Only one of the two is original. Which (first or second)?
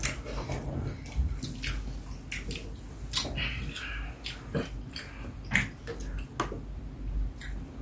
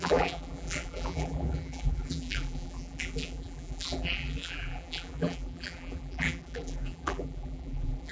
first